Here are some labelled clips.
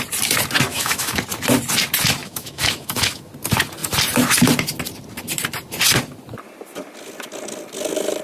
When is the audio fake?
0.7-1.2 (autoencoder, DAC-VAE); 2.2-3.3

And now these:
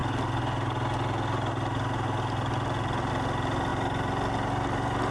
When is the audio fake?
none

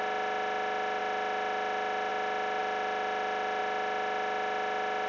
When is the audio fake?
none